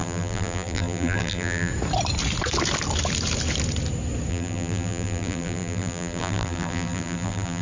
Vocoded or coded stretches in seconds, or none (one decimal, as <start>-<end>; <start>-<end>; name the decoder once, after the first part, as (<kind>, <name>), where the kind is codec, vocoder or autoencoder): 0.0-1.7 (vocoder, BigVGAN v2); 4.3-7.6